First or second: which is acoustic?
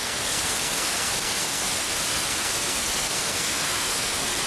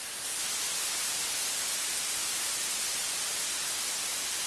second